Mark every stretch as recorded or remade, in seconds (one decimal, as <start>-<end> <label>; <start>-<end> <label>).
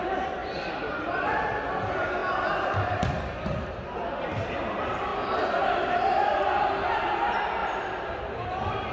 0.0-5.1 recorded; 5.1-7.0 remade; 7.0-7.6 recorded; 7.6-8.9 remade